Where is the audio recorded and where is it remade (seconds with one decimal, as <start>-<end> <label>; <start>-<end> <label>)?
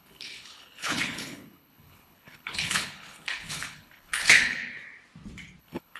0.0-4.6 remade; 4.6-5.6 recorded; 5.6-6.0 remade